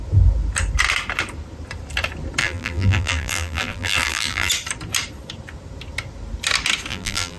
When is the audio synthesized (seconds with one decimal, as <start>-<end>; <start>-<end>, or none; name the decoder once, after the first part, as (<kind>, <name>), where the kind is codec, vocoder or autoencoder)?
2.4-4.5 (vocoder, BigVGAN v2); 6.9-7.4